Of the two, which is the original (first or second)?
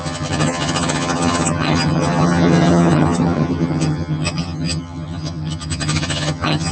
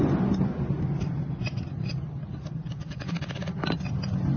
second